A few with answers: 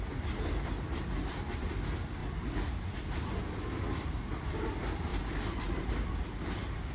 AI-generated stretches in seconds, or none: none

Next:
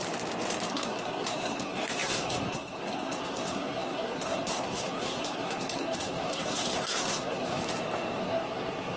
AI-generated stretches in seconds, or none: 0.7-7.6 (codec, SNAC); 8.2-9.0

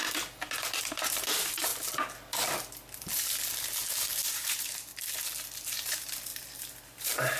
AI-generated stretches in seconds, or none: 0.8-1.7 (vocoder, BigVGAN v2); 3.9-4.9; 5.7-7.4

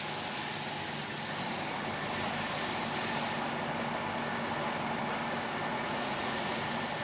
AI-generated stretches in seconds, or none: 5.7-6.5 (vocoder, Vocos)

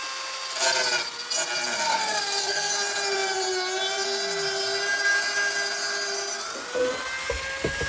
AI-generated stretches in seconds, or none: 1.9-2.7 (codec, SNAC)

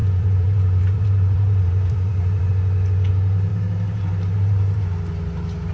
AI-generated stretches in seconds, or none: 0.0-2.5 (vocoder, BigVGAN v2); 3.5-4.8

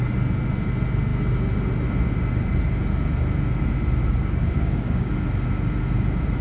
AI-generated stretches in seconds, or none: 4.1-5.1 (codec, DAC)

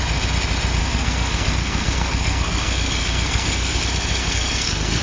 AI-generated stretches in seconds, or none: 0.8-3.8 (codec, SNAC); 4.2-5.0